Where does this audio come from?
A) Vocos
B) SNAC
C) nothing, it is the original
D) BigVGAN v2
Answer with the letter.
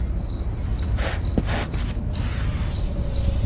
C